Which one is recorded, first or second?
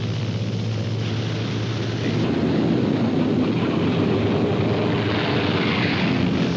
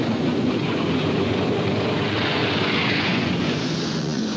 first